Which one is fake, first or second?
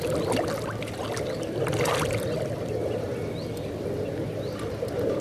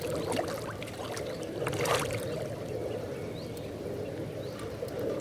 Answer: second